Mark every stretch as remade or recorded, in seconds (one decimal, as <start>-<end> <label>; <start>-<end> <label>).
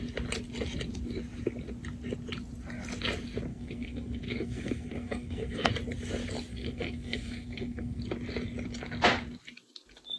0.0-3.5 recorded; 3.5-5.7 remade; 5.7-6.5 recorded; 6.5-8.0 remade; 8.0-10.2 recorded